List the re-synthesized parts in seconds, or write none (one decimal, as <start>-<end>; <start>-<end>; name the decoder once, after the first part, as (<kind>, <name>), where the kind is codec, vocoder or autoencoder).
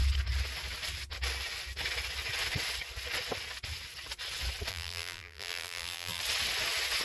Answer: 4.7-6.2 (vocoder, BigVGAN v2)